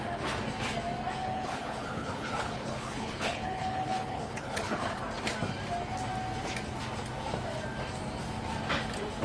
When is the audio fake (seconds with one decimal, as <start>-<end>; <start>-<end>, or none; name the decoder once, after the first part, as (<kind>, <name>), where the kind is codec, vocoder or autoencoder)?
1.2-5.0 (codec, HILCodec)